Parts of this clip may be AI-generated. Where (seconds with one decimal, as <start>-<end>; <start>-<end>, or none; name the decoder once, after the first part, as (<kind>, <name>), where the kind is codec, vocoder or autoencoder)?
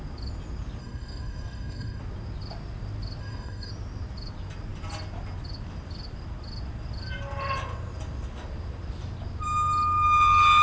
0.8-2.0 (codec, DAC); 3.2-3.7